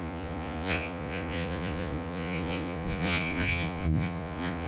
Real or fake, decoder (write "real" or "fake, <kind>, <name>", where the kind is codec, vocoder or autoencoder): fake, vocoder, Vocos